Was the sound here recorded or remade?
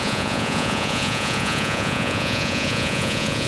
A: remade